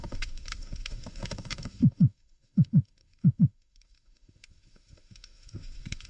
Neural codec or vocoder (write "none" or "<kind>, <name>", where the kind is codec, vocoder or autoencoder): autoencoder, DAC-VAE